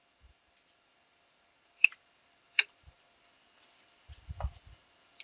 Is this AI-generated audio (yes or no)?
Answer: no